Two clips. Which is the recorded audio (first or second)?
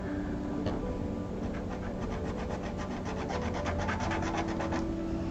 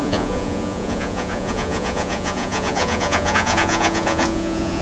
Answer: first